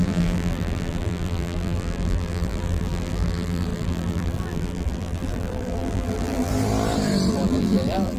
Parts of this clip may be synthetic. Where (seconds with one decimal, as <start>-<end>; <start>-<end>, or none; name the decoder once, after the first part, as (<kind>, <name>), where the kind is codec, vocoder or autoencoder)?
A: 0.0-6.5 (vocoder, BigVGAN v2); 7.3-8.2